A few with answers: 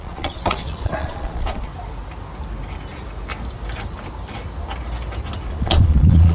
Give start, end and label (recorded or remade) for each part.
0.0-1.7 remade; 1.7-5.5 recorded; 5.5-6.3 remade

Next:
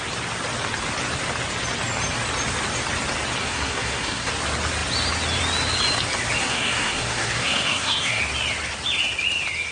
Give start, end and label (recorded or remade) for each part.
0.0-3.4 recorded; 3.4-4.3 remade; 4.3-6.4 recorded; 6.4-8.2 remade; 8.2-9.7 recorded

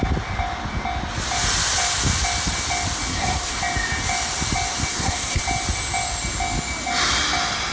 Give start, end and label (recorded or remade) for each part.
0.0-3.1 recorded; 3.1-3.6 remade; 3.6-4.9 recorded; 4.9-5.4 remade; 5.4-7.7 recorded

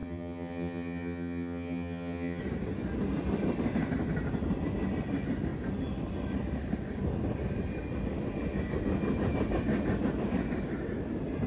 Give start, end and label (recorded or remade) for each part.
0.0-2.4 remade; 2.4-11.5 recorded

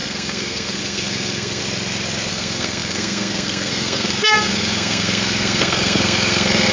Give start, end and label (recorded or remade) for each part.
0.0-1.6 remade; 1.6-2.3 recorded; 2.3-6.7 remade

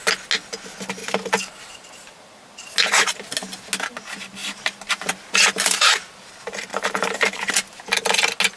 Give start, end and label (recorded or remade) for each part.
0.0-4.4 recorded; 4.4-6.3 remade; 6.3-6.7 recorded; 6.7-7.5 remade; 7.5-8.6 recorded

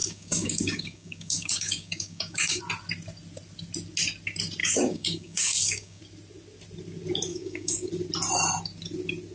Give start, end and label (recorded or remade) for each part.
0.0-2.6 remade; 2.6-4.6 recorded; 4.6-6.0 remade; 6.0-7.3 recorded; 7.3-7.9 remade; 7.9-9.3 recorded

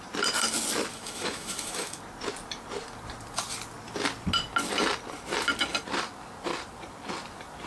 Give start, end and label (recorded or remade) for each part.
0.0-0.9 recorded; 0.9-2.0 remade; 2.0-7.7 recorded